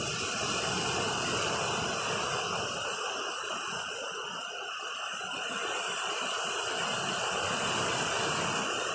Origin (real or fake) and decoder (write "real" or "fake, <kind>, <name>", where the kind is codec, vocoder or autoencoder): real